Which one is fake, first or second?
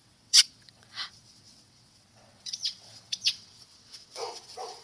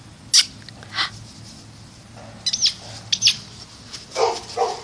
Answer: first